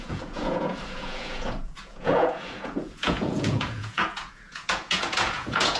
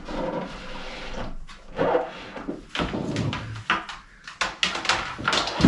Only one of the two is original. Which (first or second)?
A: second